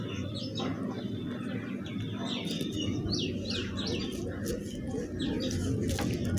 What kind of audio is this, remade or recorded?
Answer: recorded